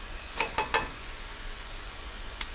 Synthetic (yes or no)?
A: yes